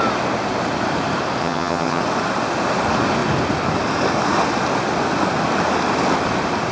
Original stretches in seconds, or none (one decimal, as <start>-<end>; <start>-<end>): 0.0-1.4; 2.0-6.7